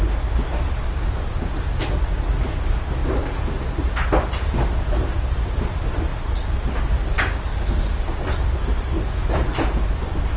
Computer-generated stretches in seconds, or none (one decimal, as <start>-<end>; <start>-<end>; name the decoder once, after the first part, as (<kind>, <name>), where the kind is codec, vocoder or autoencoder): 7.5-8.2 (codec, DAC)

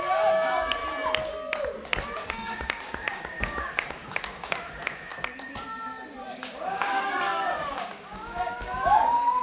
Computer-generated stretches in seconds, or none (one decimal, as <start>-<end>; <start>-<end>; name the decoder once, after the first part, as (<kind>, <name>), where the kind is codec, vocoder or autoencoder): 0.0-0.8 (codec, DAC); 2.3-5.1; 6.3-9.4

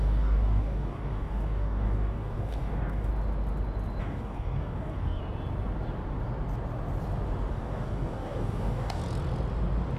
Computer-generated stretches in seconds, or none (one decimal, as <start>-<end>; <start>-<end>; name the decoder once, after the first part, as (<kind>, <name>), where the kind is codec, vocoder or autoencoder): 0.0-3.1 (codec, DAC); 4.0-5.2; 7.5-9.0

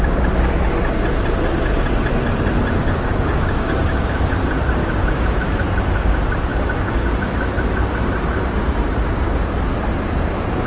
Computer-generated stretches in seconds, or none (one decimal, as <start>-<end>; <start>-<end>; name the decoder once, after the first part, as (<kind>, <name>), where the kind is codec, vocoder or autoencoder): 2.8-3.8 (codec, DAC); 4.8-5.4; 6.5-7.1

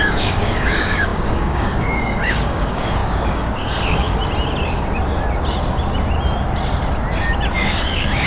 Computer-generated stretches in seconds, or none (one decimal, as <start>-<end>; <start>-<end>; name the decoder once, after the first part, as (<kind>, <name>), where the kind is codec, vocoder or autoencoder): 0.0-4.2 (codec, DAC); 7.5-8.3

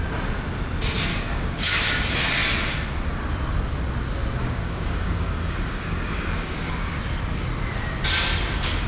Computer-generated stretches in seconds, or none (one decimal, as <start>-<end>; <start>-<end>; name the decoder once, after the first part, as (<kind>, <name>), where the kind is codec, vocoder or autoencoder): 1.1-1.9 (codec, DAC); 4.4-7.0